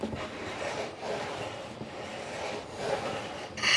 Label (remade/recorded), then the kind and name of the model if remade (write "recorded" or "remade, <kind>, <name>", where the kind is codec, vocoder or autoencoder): recorded